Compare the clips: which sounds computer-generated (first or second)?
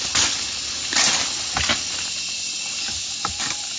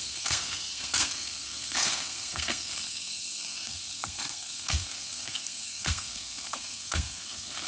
second